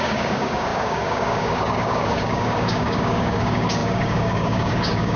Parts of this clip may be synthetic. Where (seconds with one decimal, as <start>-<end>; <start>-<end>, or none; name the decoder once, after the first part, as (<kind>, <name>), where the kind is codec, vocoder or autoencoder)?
0.0-5.2 (codec, DAC)